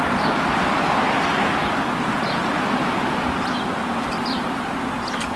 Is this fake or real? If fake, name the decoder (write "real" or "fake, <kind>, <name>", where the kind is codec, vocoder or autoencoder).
real